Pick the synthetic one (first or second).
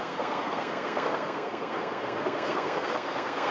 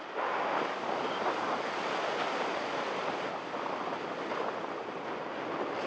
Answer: first